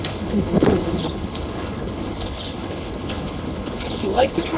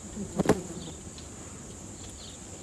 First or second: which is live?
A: second